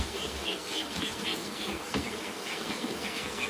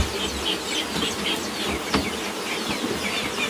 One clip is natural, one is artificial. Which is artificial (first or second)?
first